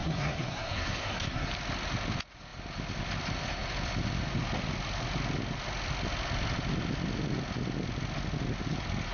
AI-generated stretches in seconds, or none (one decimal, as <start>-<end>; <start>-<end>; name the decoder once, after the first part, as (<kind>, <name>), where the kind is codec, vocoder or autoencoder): 0.0-1.5 (codec, SNAC)